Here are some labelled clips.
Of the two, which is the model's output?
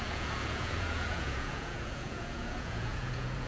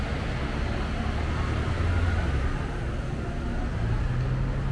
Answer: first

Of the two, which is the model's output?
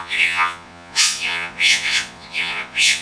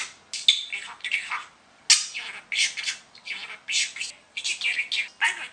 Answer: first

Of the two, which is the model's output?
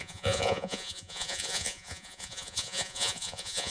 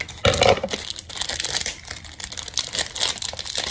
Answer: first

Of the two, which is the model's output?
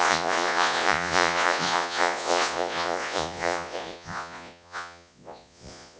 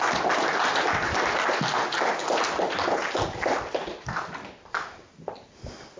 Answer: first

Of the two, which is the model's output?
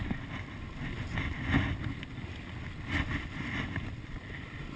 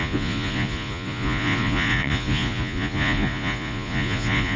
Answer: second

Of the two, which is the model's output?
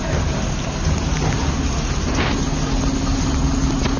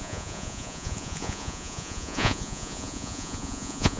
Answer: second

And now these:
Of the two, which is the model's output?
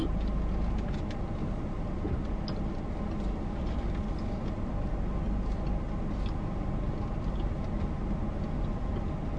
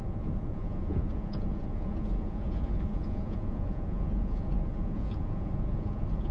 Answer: second